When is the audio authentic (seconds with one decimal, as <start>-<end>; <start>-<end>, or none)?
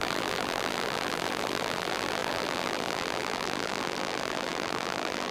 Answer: none